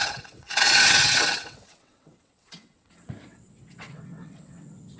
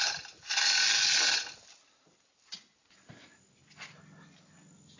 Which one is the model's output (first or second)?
first